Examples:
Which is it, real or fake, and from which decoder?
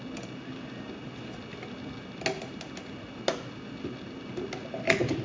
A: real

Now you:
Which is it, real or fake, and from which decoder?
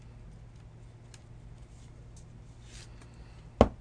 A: real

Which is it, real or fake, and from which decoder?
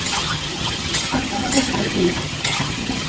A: fake, vocoder, HiFi-GAN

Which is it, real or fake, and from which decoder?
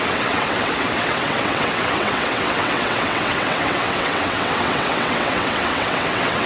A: fake, vocoder, WaveNeXt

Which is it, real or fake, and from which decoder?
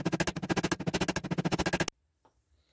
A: real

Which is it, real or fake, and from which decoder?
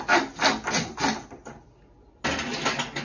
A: real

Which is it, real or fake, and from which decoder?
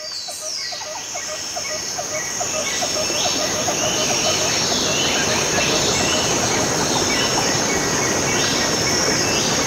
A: real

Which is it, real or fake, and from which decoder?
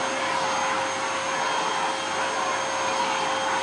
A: real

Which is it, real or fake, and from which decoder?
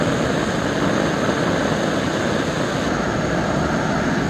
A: real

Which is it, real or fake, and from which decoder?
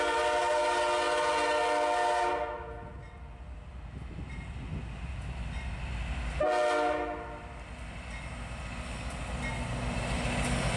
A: real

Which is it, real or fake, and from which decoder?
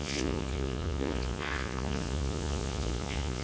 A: fake, vocoder, Vocos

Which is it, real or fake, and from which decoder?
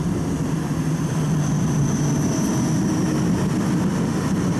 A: real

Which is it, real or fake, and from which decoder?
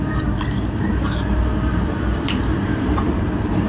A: fake, vocoder, BigVGAN v2